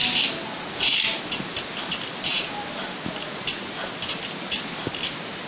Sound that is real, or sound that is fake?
real